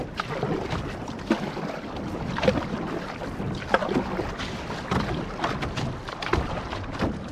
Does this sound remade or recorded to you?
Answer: recorded